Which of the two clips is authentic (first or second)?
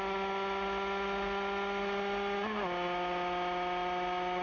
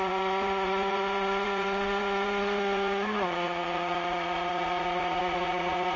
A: first